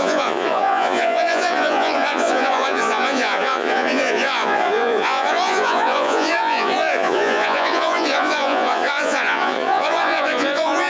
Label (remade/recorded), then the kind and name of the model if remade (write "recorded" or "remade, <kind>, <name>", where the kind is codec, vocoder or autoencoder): remade, vocoder, Vocos